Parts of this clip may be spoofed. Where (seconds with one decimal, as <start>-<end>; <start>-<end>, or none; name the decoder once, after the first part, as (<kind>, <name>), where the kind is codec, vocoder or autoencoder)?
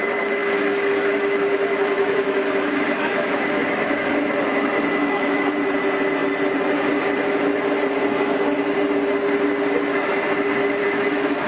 0.4-5.5 (autoencoder, DAC-VAE); 10.8-11.5